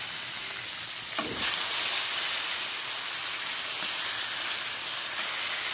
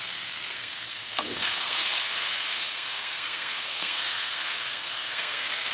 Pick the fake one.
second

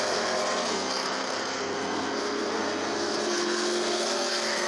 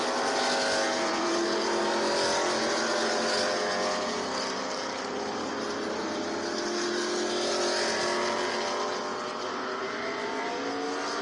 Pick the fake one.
first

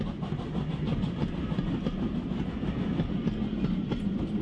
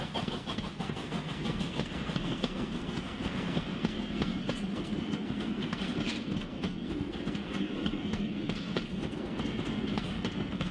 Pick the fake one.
second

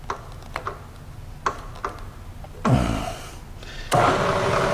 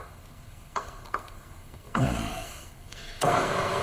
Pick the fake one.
second